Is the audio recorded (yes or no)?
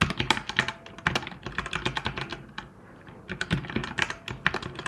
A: yes